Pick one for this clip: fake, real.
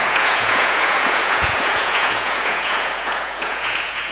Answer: fake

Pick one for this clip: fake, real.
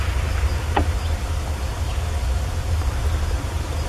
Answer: real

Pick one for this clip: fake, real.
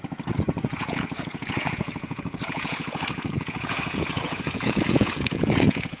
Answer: fake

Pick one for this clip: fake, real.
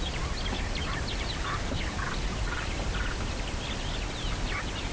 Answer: real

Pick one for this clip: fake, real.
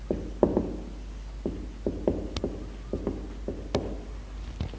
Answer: real